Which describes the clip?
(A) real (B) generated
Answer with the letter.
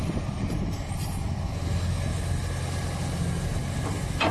A